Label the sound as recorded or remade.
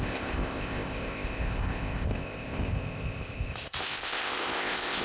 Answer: remade